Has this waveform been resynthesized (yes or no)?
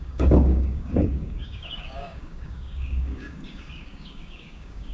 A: yes